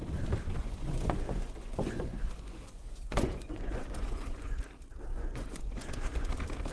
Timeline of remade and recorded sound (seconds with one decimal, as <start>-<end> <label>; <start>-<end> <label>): 0.0-0.6 recorded; 0.6-4.6 remade; 4.6-5.1 recorded; 5.1-6.3 remade; 6.3-6.7 recorded